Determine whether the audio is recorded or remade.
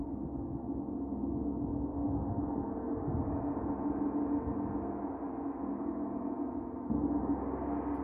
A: recorded